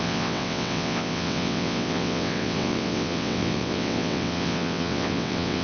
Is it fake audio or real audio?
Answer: fake